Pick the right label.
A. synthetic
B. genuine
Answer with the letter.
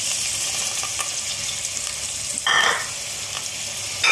B